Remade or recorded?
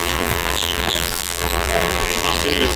remade